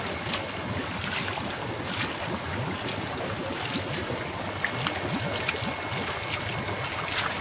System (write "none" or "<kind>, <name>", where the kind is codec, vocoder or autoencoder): none